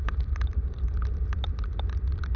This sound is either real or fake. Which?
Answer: real